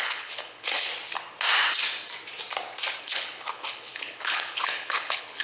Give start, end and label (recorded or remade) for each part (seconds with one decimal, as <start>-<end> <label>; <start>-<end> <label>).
0.0-0.9 remade; 0.9-3.0 recorded; 3.0-5.4 remade